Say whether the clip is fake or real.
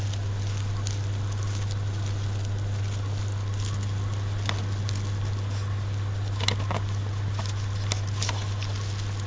real